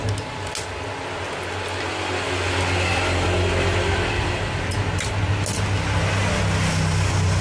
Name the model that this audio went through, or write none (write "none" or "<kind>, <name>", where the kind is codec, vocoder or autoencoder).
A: none